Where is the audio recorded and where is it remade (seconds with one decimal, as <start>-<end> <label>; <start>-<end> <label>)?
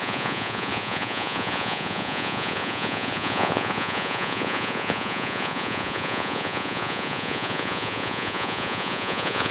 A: 0.0-9.5 remade